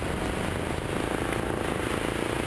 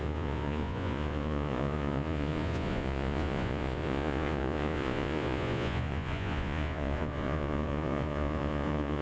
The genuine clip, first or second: first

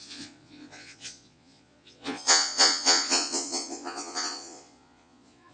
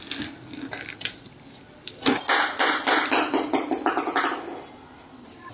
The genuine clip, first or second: second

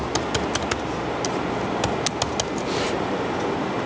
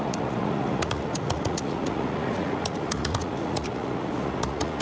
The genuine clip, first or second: first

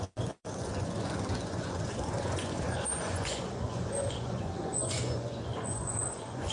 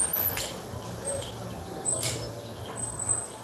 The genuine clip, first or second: second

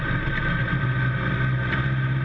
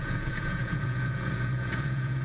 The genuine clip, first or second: first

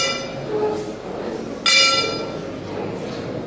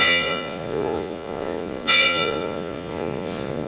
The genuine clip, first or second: first